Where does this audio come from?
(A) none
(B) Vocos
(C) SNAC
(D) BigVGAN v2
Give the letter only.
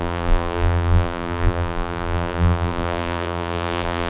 D